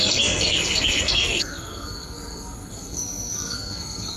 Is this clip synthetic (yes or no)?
yes